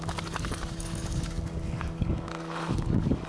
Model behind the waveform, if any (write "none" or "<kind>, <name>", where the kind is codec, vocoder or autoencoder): codec, DAC